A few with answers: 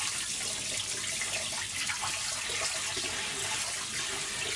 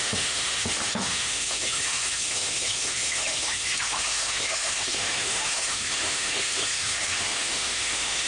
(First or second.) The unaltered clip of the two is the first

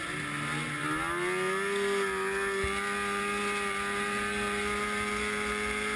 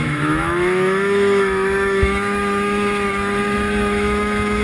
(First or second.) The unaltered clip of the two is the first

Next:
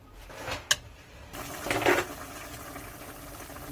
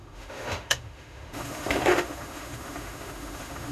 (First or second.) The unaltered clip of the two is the first